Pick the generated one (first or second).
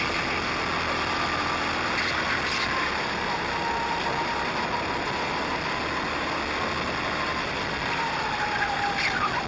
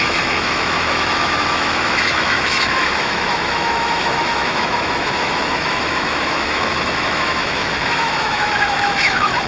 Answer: second